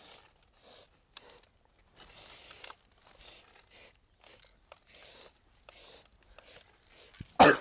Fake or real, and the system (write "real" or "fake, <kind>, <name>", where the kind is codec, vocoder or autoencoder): real